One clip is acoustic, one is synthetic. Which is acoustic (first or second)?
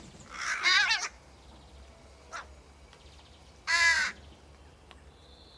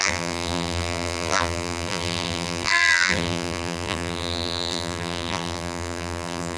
first